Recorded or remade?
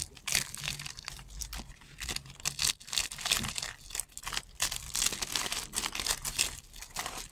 recorded